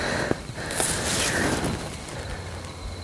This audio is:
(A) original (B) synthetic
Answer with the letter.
A